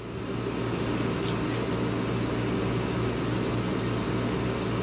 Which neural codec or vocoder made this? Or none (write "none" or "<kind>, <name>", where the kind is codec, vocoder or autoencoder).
none